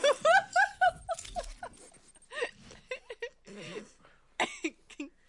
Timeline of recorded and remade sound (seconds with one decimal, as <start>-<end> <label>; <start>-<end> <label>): 0.0-0.5 recorded; 0.5-1.0 remade; 1.0-5.3 recorded